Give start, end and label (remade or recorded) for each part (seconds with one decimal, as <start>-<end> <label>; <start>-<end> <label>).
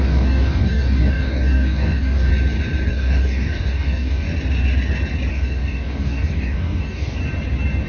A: 0.0-2.3 remade; 2.3-2.9 recorded; 2.9-4.3 remade; 4.3-5.3 recorded; 5.3-7.2 remade; 7.2-7.9 recorded